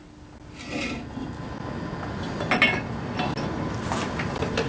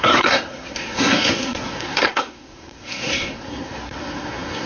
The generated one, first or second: second